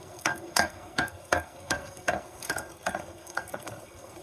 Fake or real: fake